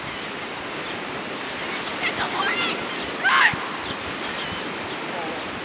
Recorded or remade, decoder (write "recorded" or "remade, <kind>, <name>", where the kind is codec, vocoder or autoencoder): recorded